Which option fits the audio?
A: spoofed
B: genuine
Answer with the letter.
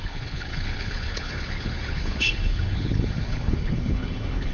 A